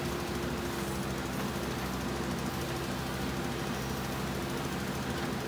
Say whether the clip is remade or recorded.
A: recorded